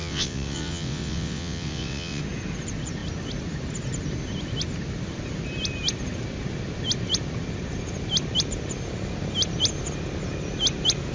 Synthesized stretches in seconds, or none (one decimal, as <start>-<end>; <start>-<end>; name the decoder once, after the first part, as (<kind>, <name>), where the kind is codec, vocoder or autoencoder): 0.0-2.2 (vocoder, WaveNeXt)